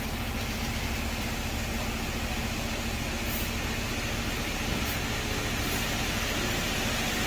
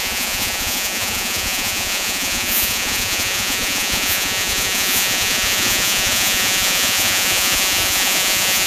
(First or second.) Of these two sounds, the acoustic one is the first